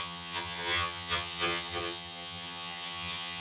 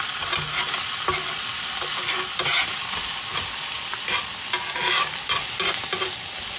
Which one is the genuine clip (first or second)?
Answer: second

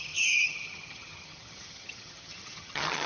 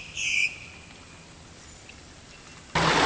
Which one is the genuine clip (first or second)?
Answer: second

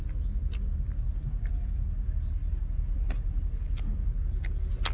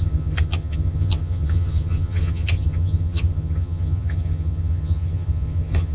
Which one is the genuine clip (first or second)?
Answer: first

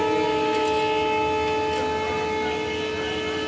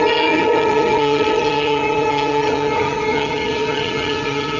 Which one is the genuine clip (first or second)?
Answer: first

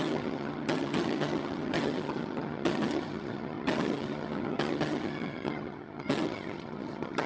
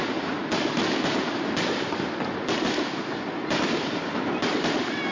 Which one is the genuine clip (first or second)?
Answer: second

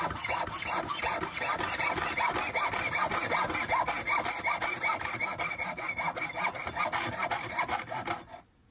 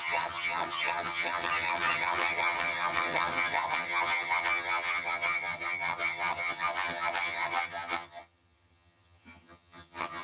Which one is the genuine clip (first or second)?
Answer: first